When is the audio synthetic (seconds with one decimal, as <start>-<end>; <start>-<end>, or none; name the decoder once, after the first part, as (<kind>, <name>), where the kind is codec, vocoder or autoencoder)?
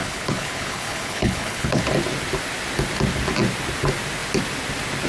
0.0-1.8 (codec, HILCodec)